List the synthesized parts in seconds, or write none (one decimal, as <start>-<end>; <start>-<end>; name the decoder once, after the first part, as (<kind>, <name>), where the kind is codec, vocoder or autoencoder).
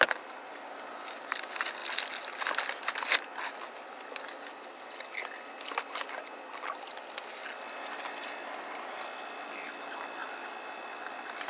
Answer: none